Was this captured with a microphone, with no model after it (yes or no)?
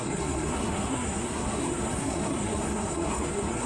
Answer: no